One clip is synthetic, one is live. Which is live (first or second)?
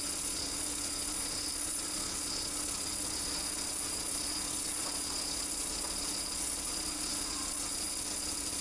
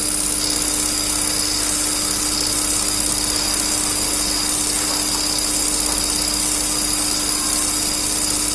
second